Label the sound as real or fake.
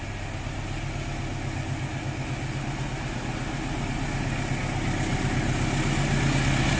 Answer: real